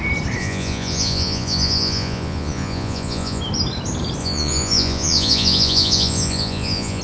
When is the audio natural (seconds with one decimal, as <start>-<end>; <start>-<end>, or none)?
0.0-0.4; 3.4-4.2

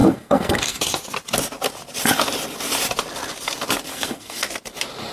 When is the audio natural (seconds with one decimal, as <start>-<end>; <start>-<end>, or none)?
0.8-3.9; 4.5-5.1

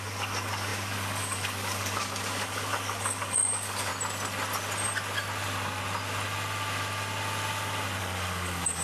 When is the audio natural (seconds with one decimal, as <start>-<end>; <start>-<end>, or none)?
3.9-8.0

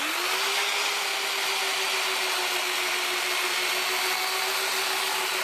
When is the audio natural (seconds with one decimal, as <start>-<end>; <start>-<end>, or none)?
0.0-5.4

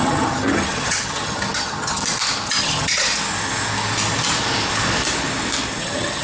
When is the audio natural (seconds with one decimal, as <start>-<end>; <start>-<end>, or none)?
2.0-2.6; 3.1-5.8